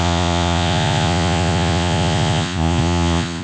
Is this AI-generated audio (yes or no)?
yes